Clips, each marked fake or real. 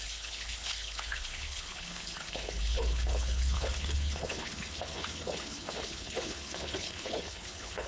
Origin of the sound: fake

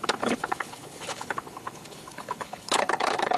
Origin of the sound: fake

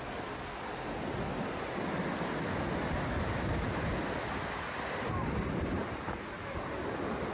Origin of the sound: real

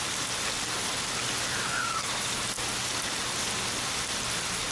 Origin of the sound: real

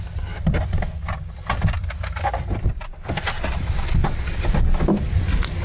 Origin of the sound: real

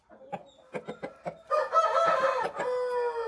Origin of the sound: real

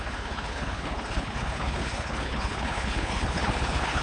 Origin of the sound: fake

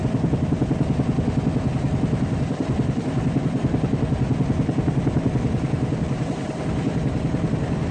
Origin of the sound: real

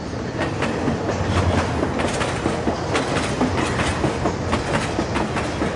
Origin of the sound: real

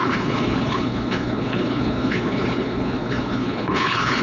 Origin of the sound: fake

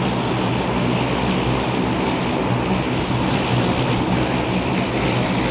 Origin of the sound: real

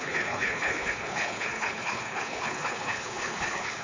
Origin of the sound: fake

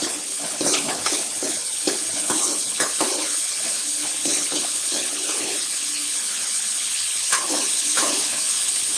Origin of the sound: fake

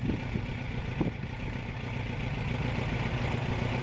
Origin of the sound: real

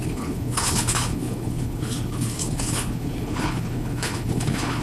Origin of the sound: fake